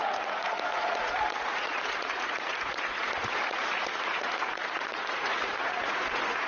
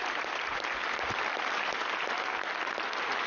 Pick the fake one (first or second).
first